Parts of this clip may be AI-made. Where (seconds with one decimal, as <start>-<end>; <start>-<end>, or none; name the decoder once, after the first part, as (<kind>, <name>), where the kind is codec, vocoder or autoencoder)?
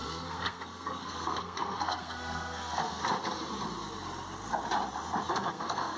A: 0.0-3.0 (codec, SNAC); 5.3-6.0